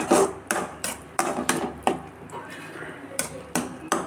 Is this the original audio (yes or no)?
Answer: no